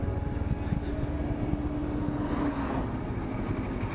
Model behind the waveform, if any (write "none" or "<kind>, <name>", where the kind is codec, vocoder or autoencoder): none